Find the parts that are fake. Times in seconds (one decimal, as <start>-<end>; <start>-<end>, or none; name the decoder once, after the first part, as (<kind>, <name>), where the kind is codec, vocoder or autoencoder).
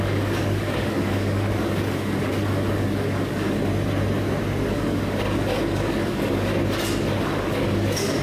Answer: 0.0-3.7 (codec, DAC); 4.7-6.5; 7.2-8.2